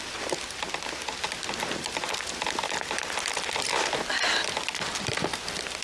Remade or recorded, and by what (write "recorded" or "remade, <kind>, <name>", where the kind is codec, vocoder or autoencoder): recorded